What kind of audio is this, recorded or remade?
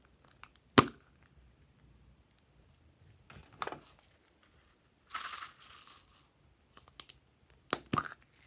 recorded